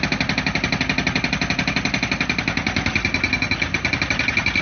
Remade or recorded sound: recorded